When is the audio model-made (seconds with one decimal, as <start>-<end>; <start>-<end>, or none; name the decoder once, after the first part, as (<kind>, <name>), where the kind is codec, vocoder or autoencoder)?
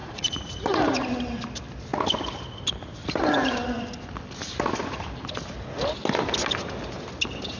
0.0-0.5 (vocoder, Vocos)